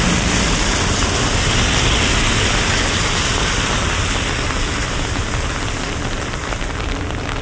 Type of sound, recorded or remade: recorded